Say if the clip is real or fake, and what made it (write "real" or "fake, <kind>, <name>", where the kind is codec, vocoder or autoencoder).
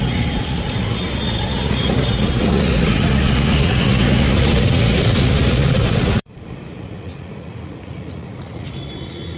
fake, vocoder, Vocos